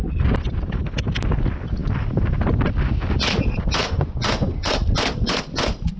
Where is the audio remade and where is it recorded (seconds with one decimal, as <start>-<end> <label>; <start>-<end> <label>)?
0.0-3.8 recorded; 3.8-4.8 remade; 4.8-6.0 recorded